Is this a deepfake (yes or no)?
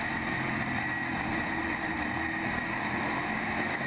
no